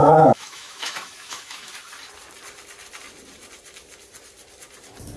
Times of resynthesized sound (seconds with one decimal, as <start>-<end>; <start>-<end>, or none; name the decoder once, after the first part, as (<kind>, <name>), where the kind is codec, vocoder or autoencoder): 0.0-1.7 (autoencoder, DAC-VAE)